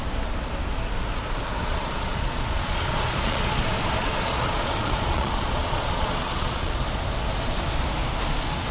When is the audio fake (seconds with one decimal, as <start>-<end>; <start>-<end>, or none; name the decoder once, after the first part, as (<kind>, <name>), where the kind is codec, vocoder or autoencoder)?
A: 1.6-3.6 (vocoder, Vocos); 4.0-6.8